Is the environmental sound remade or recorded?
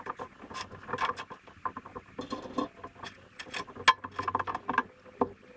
recorded